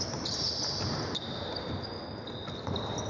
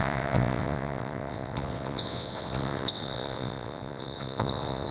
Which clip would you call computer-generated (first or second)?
second